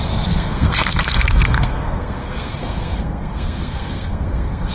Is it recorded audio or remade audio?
remade